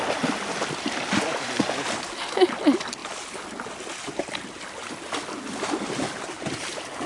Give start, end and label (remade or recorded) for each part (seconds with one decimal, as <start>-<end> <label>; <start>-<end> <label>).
0.0-7.1 recorded